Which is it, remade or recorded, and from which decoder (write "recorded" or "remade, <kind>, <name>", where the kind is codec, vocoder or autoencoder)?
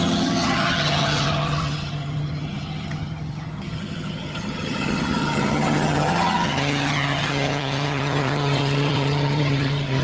remade, vocoder, HiFi-GAN